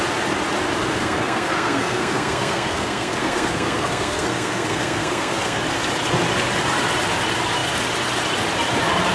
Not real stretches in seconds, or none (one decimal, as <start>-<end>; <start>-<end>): 0.8-5.6